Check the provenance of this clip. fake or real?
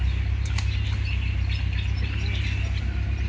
real